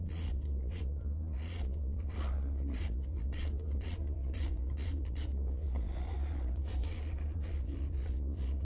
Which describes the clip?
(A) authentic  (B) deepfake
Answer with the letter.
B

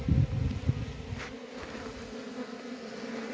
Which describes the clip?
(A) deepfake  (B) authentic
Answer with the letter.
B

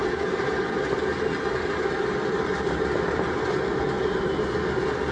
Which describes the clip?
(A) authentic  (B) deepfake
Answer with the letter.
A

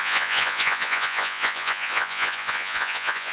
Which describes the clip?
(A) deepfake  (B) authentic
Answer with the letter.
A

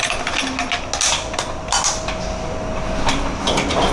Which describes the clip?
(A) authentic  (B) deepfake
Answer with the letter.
A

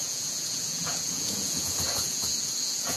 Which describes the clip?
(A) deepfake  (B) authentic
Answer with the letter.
A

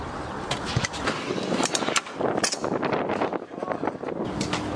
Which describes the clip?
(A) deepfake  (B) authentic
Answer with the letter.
B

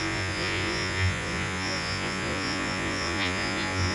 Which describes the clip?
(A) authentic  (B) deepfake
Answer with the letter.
B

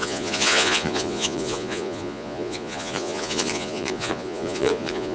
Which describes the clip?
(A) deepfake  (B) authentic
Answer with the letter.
A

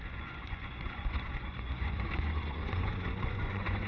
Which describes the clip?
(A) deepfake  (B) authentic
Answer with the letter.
A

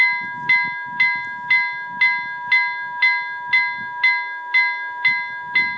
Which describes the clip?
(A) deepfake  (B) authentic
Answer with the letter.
B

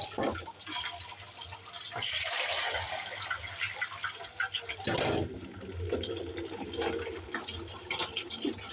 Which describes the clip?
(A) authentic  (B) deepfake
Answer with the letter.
A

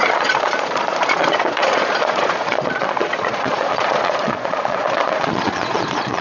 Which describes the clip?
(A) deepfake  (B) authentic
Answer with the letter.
A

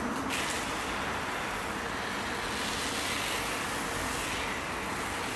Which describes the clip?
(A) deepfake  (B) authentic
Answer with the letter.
B